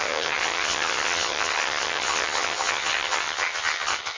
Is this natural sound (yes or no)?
no